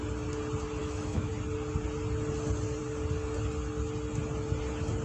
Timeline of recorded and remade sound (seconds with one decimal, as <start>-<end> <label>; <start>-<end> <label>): 0.0-0.8 recorded; 0.8-1.3 remade; 1.3-5.0 recorded